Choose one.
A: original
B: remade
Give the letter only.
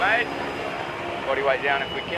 A